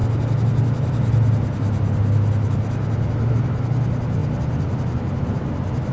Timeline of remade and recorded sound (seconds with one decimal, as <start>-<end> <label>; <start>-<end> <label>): 0.0-5.9 recorded